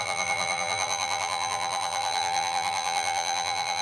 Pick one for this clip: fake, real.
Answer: fake